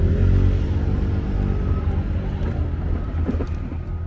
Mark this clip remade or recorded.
recorded